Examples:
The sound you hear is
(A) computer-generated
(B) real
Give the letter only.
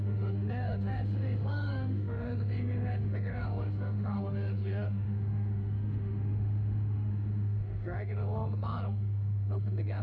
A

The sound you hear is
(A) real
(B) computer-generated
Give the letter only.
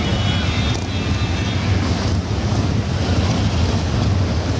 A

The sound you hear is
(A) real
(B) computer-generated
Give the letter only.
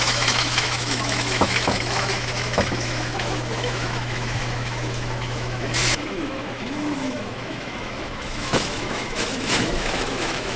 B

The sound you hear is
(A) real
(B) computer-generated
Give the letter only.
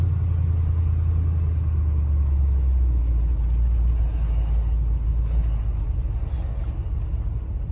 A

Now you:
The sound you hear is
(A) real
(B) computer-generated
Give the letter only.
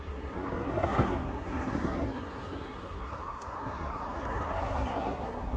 B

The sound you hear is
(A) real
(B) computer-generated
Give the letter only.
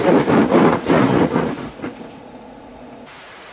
B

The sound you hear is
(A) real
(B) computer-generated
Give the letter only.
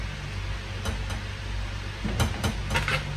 A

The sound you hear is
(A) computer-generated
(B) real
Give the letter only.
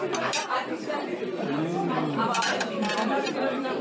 A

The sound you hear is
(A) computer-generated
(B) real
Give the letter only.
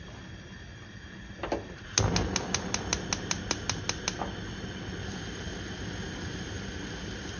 B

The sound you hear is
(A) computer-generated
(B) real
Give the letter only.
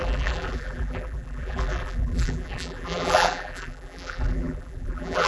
A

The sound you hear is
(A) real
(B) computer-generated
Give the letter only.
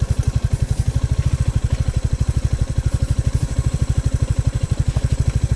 B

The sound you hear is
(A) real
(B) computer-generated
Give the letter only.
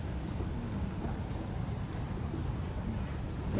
A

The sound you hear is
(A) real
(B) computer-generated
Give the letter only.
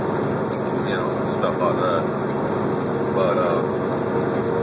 A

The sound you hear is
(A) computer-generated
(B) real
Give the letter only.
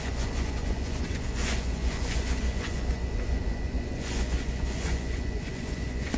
A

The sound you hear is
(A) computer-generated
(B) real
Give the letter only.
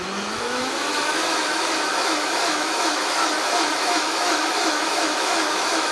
A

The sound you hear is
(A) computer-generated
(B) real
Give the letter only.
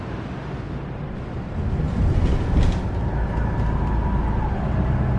B